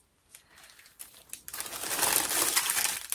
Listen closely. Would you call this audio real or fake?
real